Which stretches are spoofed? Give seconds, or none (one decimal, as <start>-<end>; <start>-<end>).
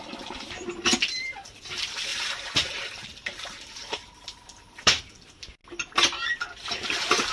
2.1-5.0